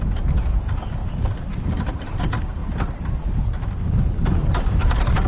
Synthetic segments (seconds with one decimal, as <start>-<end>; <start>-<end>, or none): 4.4-5.3